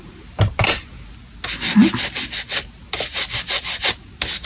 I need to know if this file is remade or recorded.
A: recorded